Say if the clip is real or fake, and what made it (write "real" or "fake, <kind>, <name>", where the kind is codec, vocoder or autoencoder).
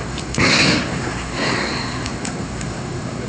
fake, codec, SNAC